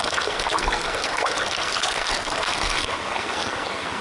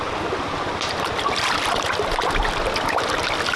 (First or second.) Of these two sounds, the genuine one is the second